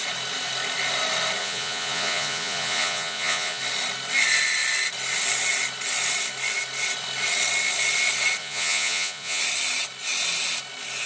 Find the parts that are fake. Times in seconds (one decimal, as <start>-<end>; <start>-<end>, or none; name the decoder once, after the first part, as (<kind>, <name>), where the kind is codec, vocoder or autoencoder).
1.4-3.6 (vocoder, Vocos); 8.4-9.4